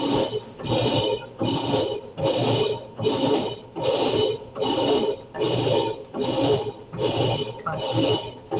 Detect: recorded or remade recorded